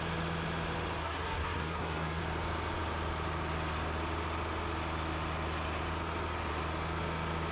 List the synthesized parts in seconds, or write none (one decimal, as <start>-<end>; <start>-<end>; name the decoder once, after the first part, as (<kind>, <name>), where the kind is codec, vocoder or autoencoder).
1.0-2.2 (codec, SNAC)